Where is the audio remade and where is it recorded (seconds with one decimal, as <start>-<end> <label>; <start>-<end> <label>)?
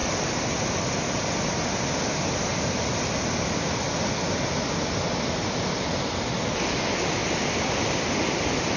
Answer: 0.0-8.8 recorded